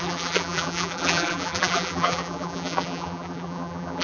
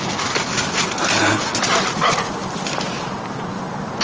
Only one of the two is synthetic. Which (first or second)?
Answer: first